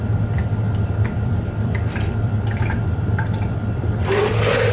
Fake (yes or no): yes